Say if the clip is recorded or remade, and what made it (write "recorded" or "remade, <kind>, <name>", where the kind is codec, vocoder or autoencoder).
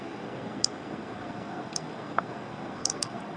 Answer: remade, codec, SNAC